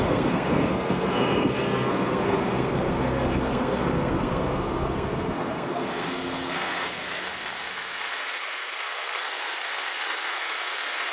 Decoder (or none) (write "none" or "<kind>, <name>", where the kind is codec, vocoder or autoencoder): codec, SNAC